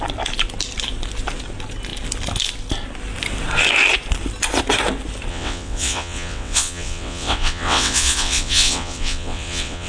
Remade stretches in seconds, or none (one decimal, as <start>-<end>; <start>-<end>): 5.3-9.9